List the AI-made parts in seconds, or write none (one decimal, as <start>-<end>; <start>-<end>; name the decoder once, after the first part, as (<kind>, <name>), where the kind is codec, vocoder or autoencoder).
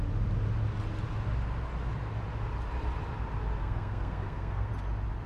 3.6-4.7 (codec, SNAC)